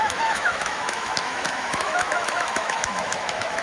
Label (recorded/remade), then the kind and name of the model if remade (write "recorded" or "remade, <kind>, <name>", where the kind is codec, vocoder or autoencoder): remade, autoencoder, DAC-VAE